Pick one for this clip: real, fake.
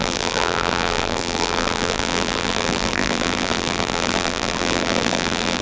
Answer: fake